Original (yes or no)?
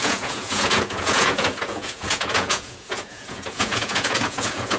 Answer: no